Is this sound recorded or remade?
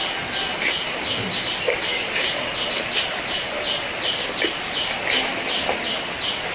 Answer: recorded